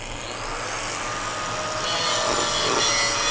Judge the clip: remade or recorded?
recorded